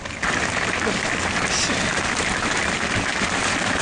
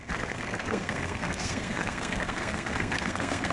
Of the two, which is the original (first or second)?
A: first